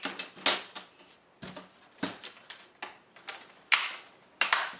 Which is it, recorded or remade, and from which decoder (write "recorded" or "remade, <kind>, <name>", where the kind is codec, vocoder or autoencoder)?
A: recorded